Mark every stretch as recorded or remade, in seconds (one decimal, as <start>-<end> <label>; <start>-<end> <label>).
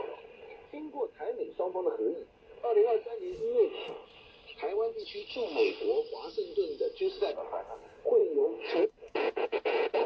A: 0.0-8.2 recorded; 8.2-10.1 remade